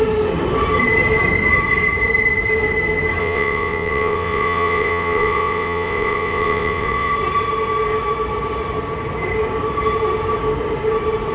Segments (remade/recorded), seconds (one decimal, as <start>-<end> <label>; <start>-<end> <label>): 0.0-3.2 recorded; 3.2-7.1 remade; 7.1-11.3 recorded